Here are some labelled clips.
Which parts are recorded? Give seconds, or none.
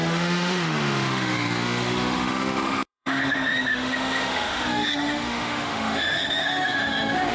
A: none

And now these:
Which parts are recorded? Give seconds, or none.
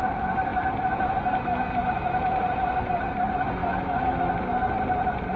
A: 0.0-1.8; 2.3-3.6; 4.3-5.4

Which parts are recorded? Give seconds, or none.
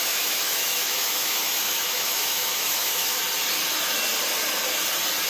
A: 3.2-5.3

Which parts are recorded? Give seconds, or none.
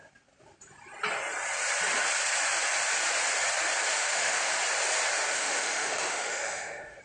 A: 0.0-3.9; 4.6-5.3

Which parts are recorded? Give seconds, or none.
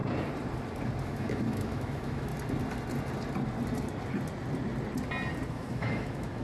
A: 0.0-1.0; 2.3-5.5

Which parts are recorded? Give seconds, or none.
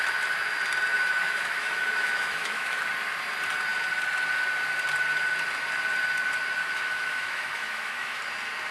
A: 0.0-0.9; 2.8-6.6; 8.2-8.7